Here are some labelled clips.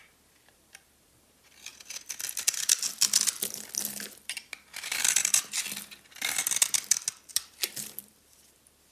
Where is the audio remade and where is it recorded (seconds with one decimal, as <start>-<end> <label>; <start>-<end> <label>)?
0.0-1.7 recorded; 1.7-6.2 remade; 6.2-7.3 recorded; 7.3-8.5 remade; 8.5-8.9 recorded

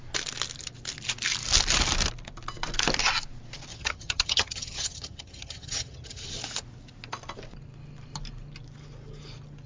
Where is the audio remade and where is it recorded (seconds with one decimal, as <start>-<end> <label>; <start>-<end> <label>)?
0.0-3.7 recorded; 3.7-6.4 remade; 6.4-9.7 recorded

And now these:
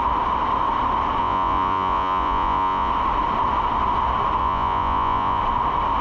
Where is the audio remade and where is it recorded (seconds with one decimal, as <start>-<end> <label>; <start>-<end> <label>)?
0.0-1.2 recorded; 1.2-2.9 remade; 2.9-4.4 recorded; 4.4-5.4 remade; 5.4-6.0 recorded

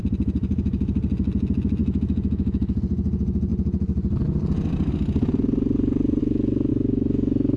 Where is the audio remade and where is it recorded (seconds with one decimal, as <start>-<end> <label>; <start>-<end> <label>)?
0.0-1.8 recorded; 1.8-2.8 remade; 2.8-6.2 recorded; 6.2-6.7 remade; 6.7-7.6 recorded

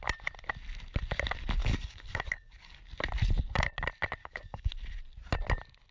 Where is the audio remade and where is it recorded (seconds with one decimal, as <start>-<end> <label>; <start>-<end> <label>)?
0.0-1.6 recorded; 1.6-2.8 remade; 2.8-4.2 recorded; 4.2-4.7 remade; 4.7-5.9 recorded

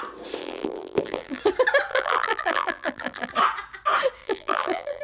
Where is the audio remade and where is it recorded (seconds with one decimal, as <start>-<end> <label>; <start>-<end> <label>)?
0.0-0.4 recorded; 0.4-1.4 remade; 1.4-1.9 recorded; 1.9-3.3 remade; 3.3-4.2 recorded; 4.2-5.0 remade

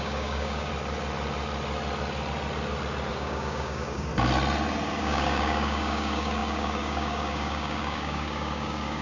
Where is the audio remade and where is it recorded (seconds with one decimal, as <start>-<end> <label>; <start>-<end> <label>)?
0.0-0.7 remade; 0.7-3.1 recorded; 3.1-4.1 remade; 4.1-5.0 recorded; 5.0-9.0 remade